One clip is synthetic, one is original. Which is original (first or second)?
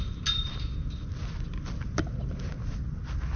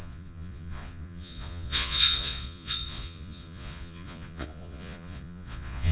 first